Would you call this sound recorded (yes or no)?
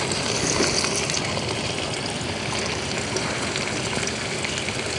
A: yes